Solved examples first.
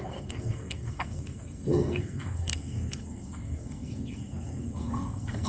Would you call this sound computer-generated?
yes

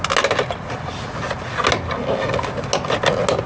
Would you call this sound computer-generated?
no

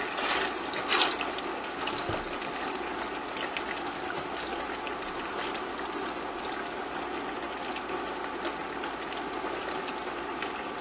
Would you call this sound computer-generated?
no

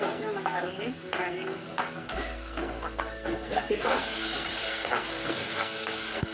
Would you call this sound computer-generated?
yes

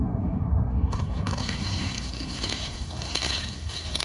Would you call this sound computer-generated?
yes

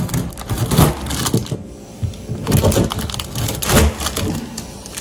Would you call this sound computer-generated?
no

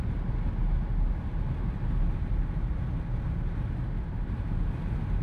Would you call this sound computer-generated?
no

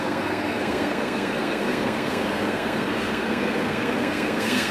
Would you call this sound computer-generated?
yes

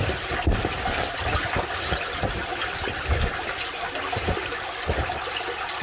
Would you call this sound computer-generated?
no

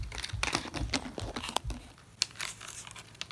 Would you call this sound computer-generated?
no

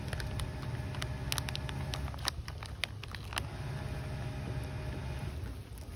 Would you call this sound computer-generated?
no